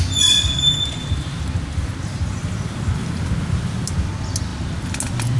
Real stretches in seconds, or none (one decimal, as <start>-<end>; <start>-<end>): 0.0-1.0; 2.9-5.4